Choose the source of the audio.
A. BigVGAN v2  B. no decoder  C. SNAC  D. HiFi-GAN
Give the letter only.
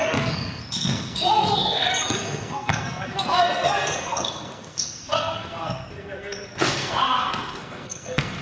C